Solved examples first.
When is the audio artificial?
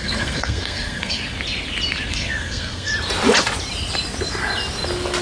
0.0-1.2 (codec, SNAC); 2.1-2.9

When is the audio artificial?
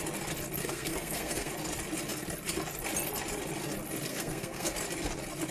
0.6-1.5 (codec, SNAC); 4.1-4.7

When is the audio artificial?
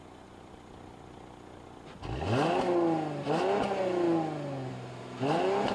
none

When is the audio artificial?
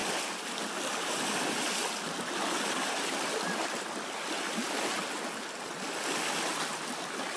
none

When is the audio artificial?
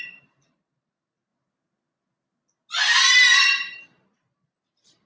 0.0-1.3 (vocoder, BigVGAN v2); 2.8-5.1